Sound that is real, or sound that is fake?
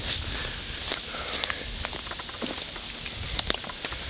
real